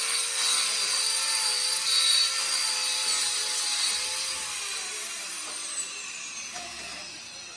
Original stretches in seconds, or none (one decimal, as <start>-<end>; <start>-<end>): none